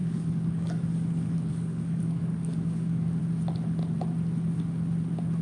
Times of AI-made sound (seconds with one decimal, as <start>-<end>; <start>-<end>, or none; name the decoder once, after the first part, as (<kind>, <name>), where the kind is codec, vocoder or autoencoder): 0.0-0.9 (codec, DAC); 1.5-3.2

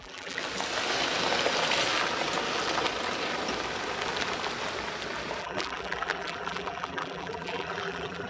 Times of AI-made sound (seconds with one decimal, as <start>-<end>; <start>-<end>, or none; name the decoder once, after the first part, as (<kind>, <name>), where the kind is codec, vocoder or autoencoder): 0.0-0.4 (vocoder, BigVGAN v2); 5.4-8.3

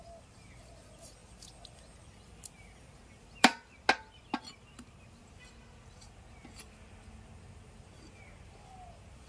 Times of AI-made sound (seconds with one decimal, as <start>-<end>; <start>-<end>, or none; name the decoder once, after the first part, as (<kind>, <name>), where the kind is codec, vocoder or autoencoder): none

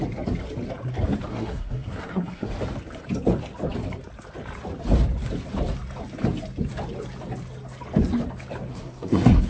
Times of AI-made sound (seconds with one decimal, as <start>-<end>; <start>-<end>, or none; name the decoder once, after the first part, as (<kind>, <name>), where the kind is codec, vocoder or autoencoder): 1.3-2.5 (codec, SNAC); 8.7-9.5

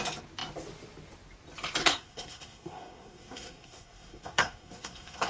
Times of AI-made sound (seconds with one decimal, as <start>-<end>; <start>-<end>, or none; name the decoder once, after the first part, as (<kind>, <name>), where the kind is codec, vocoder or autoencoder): 1.8-5.3 (codec, SNAC)

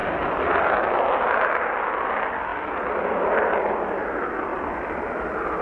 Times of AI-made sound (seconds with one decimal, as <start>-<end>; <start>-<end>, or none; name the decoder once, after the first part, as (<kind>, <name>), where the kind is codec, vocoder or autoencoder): none